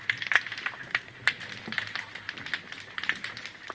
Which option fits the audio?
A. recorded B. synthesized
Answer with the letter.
A